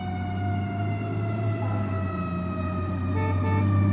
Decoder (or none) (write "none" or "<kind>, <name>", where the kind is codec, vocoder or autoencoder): none